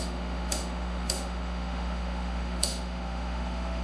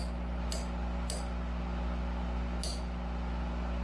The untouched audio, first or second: second